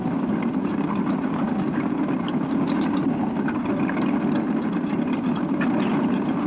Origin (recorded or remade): recorded